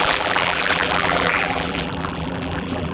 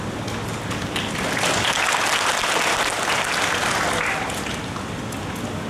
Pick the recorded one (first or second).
second